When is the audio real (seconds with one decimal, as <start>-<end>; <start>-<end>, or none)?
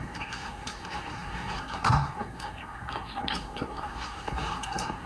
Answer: none